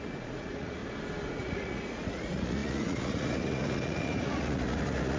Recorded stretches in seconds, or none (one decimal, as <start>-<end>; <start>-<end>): 0.8-1.3